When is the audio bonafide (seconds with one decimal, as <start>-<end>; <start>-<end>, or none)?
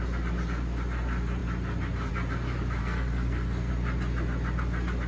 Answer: 0.0-2.8; 3.7-5.1